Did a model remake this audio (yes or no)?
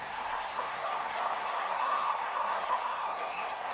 yes